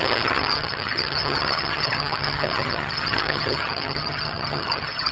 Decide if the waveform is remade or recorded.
remade